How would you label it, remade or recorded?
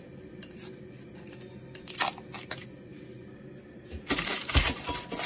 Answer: recorded